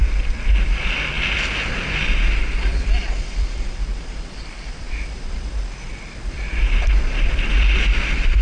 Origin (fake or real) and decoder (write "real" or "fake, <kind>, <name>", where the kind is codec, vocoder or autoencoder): real